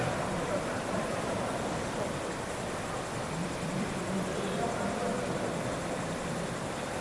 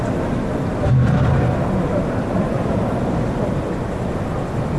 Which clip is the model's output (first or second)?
first